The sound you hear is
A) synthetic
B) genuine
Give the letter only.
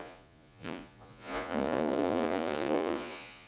A